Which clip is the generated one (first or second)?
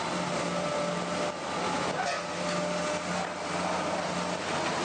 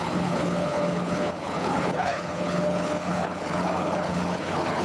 second